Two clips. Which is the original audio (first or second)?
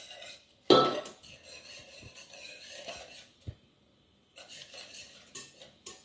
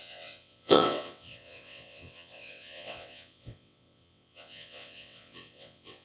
first